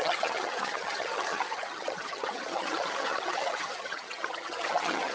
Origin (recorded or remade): remade